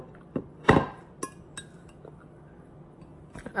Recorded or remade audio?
recorded